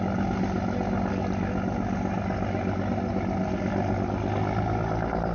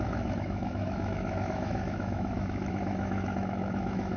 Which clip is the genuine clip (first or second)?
first